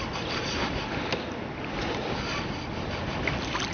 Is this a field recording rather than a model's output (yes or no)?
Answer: yes